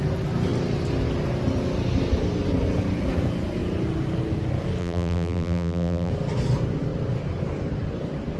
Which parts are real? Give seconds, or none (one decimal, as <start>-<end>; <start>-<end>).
0.0-4.8; 6.1-8.4